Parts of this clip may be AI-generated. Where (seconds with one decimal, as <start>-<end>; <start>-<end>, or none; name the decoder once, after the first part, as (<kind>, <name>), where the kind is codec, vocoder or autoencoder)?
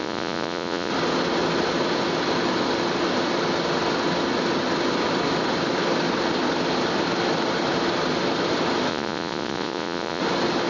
0.0-0.9 (vocoder, Vocos); 8.9-10.2